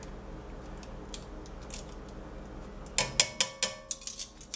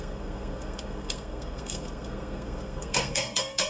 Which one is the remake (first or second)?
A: second